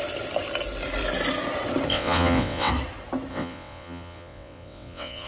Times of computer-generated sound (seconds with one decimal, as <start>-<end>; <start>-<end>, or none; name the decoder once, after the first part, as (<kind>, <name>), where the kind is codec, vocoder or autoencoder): 1.9-2.7 (vocoder, WaveNeXt); 3.3-5.3